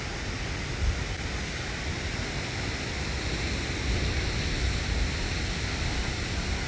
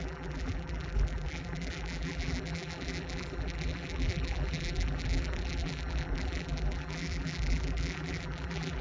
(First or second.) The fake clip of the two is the second